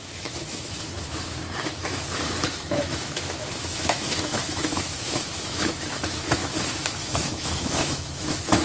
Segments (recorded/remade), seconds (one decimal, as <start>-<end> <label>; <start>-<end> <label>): 0.0-8.6 remade